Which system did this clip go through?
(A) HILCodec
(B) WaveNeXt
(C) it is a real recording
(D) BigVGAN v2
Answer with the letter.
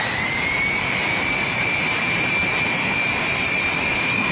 D